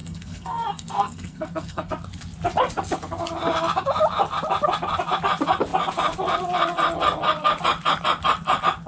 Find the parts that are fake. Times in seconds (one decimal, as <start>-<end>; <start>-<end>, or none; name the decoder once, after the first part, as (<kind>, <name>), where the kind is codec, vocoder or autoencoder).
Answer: 0.0-1.9 (codec, SNAC)